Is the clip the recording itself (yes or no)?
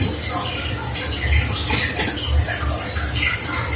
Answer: yes